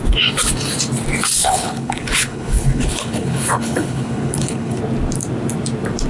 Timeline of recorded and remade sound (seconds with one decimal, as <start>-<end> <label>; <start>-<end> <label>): 0.0-1.4 recorded; 1.4-4.8 remade; 4.8-6.1 recorded